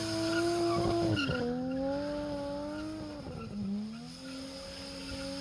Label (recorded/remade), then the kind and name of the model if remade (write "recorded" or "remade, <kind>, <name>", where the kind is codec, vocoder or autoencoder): recorded